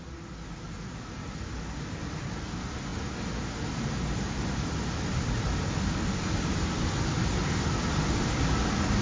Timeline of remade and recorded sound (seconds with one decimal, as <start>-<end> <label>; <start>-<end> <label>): 0.0-9.0 recorded